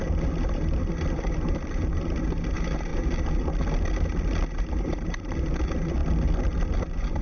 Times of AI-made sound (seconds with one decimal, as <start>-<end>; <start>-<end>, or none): 0.0-2.9; 4.5-6.0; 6.7-7.2